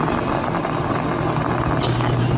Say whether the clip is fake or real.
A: real